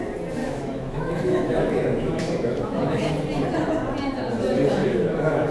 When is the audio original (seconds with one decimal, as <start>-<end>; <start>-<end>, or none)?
0.0-0.4; 3.1-4.8

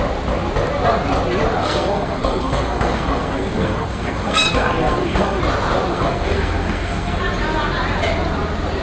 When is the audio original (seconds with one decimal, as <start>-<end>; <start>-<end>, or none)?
0.0-1.6; 5.4-5.9; 7.2-8.8

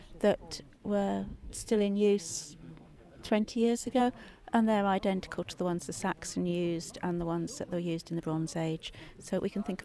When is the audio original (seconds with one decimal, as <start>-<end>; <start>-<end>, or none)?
0.0-1.3; 4.0-9.8

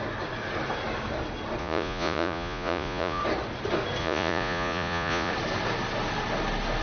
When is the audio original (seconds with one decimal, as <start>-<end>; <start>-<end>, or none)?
0.0-1.6; 3.2-4.0; 5.3-6.8